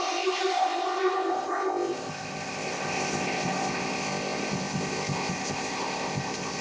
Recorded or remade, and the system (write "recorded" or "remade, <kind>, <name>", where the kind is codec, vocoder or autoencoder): remade, codec, ZipCodec